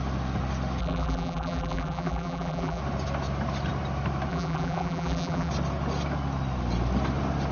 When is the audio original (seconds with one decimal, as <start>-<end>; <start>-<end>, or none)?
0.0-0.8; 2.8-4.3; 5.5-7.5